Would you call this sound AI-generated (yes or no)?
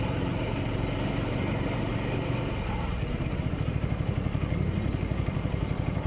yes